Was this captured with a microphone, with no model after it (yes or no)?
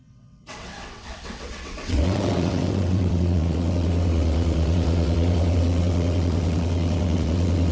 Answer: no